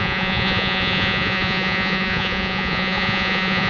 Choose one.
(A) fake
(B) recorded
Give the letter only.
A